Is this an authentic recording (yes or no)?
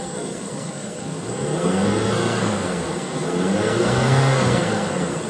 no